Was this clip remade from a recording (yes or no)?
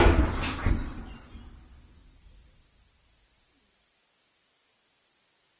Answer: no